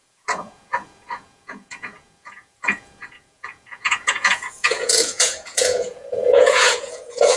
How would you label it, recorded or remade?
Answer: remade